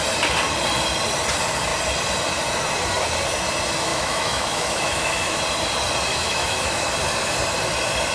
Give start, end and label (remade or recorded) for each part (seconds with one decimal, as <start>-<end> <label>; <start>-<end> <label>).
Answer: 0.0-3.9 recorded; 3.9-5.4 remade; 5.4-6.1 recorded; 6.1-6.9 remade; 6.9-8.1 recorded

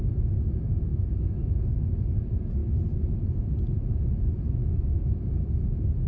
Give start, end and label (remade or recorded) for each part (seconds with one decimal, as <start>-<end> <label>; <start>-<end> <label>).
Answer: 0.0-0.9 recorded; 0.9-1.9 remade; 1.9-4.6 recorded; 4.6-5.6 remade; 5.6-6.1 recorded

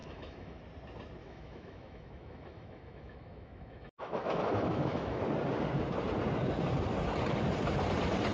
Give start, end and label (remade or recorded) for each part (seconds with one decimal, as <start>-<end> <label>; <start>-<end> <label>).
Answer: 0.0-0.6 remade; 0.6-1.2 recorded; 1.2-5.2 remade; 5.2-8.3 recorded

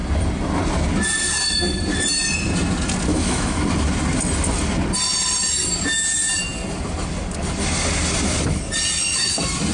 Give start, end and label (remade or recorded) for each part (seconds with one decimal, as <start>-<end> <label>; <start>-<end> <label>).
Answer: 0.0-3.1 recorded; 3.1-3.6 remade; 3.6-9.7 recorded

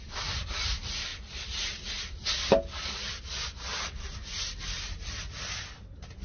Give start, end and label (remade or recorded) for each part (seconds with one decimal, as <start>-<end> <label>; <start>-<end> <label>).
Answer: 0.0-6.2 recorded